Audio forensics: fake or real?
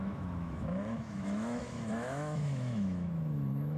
fake